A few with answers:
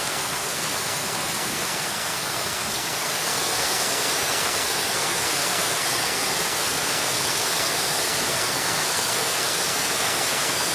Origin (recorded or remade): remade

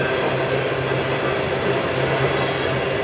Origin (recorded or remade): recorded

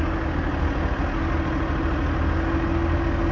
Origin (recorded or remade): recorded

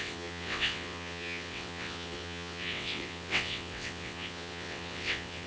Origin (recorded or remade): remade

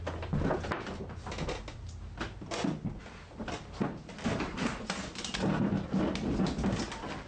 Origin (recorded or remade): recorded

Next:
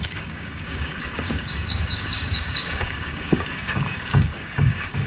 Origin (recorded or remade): remade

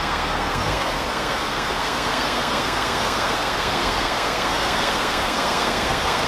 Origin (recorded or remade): remade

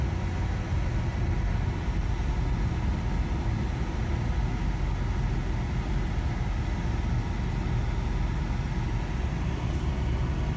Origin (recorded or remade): recorded